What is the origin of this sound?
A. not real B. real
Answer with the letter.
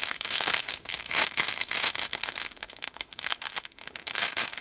A